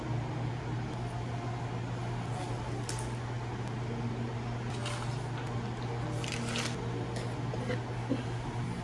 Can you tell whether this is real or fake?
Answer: real